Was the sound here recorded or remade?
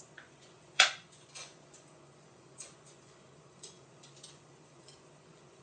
remade